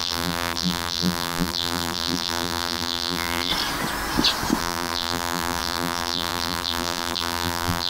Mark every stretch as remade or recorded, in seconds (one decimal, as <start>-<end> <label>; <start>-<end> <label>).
0.0-3.5 remade; 3.5-4.6 recorded; 4.6-7.9 remade